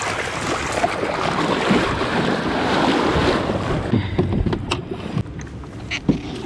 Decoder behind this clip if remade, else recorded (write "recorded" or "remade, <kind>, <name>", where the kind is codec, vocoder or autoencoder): recorded